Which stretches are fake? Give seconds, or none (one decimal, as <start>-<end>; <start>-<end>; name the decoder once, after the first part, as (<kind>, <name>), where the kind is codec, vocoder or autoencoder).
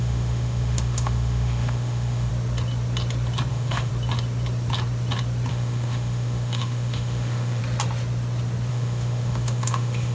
0.0-2.3 (autoencoder, DAC-VAE); 3.5-3.9; 5.5-7.6; 8.7-10.1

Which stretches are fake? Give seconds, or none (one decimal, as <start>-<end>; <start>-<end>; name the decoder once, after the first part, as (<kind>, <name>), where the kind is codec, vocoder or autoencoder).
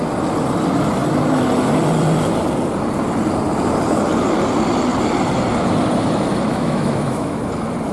6.5-7.4 (autoencoder, DAC-VAE)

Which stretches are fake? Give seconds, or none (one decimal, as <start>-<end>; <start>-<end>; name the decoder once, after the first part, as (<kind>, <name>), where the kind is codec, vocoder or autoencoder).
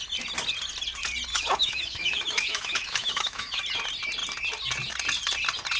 1.3-3.6 (autoencoder, DAC-VAE)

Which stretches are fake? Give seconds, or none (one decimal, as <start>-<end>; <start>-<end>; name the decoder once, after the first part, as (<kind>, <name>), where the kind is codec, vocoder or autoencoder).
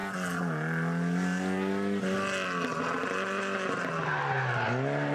none